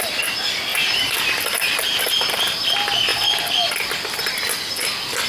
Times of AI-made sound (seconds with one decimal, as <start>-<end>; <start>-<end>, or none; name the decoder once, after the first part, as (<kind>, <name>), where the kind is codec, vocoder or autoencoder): 0.7-2.4 (vocoder, BigVGAN v2)